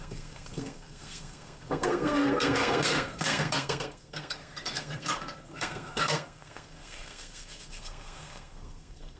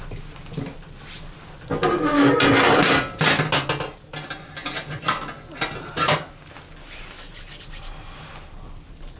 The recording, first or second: second